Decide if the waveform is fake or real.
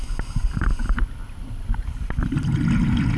real